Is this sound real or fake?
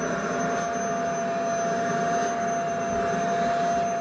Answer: real